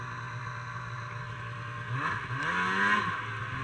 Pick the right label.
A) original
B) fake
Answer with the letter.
A